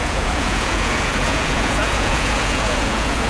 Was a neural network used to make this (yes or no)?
yes